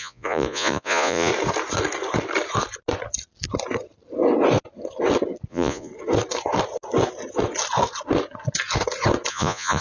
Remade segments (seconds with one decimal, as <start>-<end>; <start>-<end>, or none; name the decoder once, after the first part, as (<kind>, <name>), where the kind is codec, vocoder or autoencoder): 0.0-1.3 (vocoder, Vocos); 5.5-5.9; 9.3-9.8